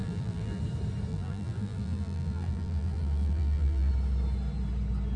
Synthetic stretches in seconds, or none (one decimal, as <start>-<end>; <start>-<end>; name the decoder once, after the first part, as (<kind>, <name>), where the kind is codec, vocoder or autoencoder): 0.0-0.6 (vocoder, BigVGAN v2); 1.1-3.9